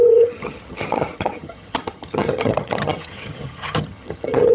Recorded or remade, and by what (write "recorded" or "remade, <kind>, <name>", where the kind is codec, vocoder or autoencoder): remade, vocoder, HiFi-GAN